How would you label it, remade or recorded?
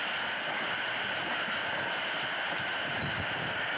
recorded